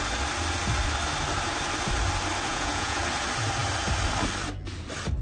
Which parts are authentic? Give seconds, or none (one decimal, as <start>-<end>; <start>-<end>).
0.0-2.5; 3.0-5.2